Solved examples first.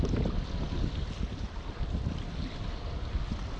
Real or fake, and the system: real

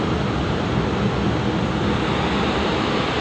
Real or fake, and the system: real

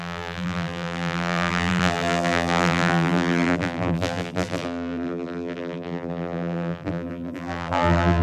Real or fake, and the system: fake, vocoder, BigVGAN v2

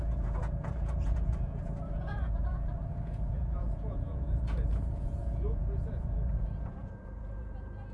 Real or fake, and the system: fake, vocoder, Vocos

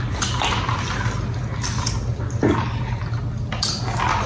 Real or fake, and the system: real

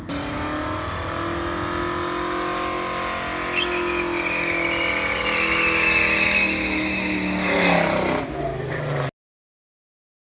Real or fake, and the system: real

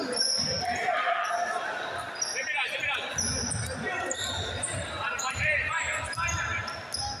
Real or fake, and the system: real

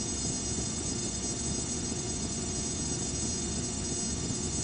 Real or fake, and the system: fake, vocoder, Vocos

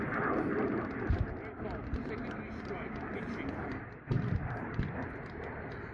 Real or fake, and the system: real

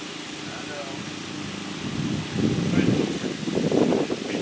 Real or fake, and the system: real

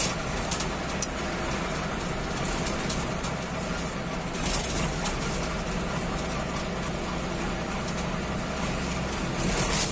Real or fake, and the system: real